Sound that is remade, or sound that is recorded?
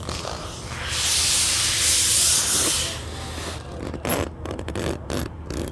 recorded